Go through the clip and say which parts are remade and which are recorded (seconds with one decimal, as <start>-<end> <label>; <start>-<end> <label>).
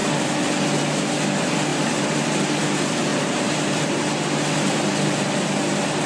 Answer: 0.0-1.7 recorded; 1.7-2.6 remade; 2.6-3.1 recorded; 3.1-3.8 remade; 3.8-6.1 recorded